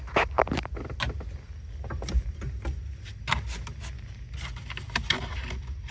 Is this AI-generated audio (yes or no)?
no